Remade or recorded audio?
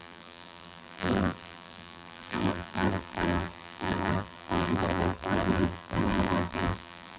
remade